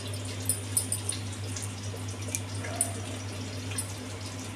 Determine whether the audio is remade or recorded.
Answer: recorded